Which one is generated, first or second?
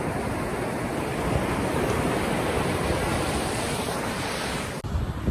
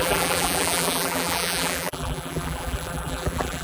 second